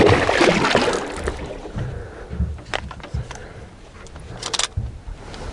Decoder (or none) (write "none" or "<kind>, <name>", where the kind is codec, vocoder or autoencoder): none